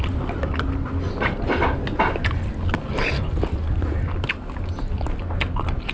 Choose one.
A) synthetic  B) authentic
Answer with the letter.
B